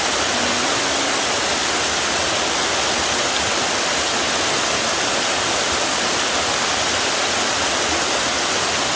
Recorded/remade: recorded